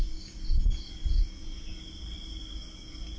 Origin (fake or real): real